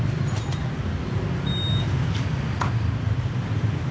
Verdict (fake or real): real